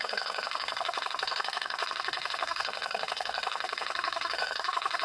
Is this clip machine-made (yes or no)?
yes